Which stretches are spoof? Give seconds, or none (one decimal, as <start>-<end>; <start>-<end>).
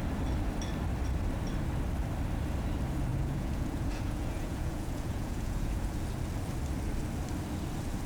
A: 3.1-6.0